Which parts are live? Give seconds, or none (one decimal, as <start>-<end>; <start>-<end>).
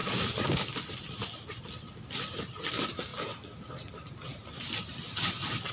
0.0-5.7